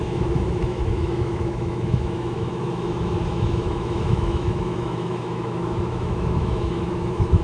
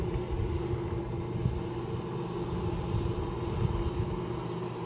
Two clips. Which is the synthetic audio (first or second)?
first